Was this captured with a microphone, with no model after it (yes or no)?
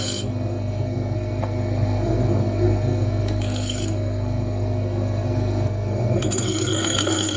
no